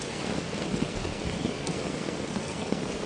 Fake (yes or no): yes